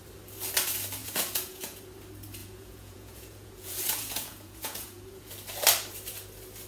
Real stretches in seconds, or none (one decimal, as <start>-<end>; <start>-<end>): 0.0-1.0; 1.8-2.4; 5.3-6.7